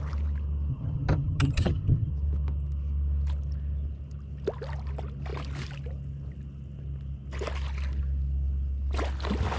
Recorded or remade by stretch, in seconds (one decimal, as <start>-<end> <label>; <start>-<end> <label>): 0.0-0.7 recorded; 0.7-2.1 remade; 2.1-9.6 recorded